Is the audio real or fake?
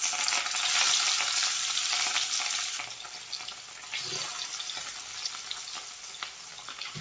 real